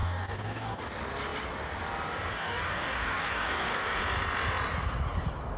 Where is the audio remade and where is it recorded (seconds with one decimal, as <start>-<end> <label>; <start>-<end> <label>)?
0.0-0.8 remade; 0.8-2.3 recorded; 2.3-4.0 remade; 4.0-5.6 recorded